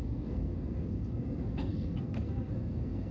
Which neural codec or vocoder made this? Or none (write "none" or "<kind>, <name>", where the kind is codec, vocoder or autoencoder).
codec, SNAC